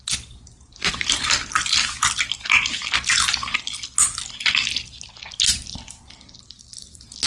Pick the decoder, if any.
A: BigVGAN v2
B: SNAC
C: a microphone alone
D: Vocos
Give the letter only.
C